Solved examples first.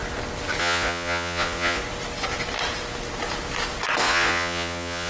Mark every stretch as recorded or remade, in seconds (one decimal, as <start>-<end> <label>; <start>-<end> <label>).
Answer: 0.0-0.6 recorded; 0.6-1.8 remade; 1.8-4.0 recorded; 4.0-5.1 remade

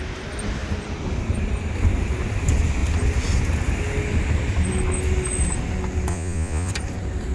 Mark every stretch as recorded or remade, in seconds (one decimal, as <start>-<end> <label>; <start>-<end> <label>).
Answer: 0.0-6.1 recorded; 6.1-6.7 remade; 6.7-7.3 recorded

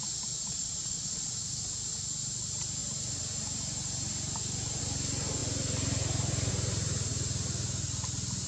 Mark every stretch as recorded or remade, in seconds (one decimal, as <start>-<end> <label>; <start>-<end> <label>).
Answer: 0.0-0.5 recorded; 0.5-1.2 remade; 1.2-8.5 recorded